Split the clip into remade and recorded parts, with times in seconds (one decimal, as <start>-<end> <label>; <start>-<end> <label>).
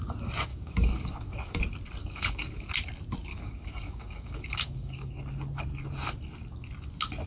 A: 0.0-0.5 recorded; 0.5-1.6 remade; 1.6-2.0 recorded; 2.0-2.7 remade; 2.7-3.3 recorded; 3.3-5.2 remade; 5.2-7.3 recorded